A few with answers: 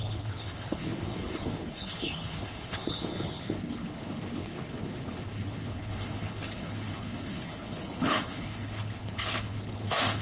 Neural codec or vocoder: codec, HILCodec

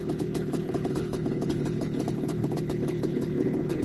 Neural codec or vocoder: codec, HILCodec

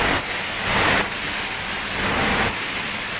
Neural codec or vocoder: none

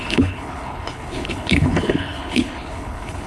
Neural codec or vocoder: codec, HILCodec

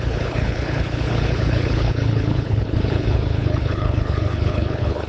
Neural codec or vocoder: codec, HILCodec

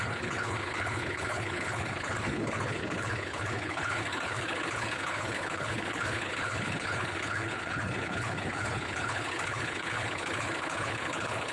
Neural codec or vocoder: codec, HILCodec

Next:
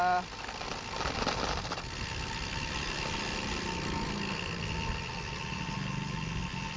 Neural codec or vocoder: none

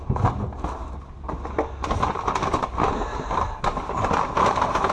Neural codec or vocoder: none